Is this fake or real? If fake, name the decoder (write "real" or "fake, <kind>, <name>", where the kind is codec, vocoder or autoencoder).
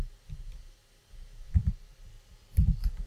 real